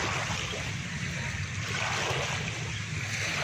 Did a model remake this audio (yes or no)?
no